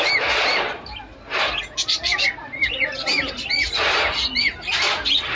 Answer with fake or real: real